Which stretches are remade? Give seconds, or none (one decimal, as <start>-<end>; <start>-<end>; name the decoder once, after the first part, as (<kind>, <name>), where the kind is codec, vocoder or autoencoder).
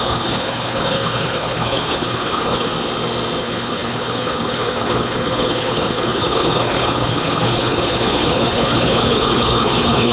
0.0-2.7 (codec, HILCodec); 3.4-10.1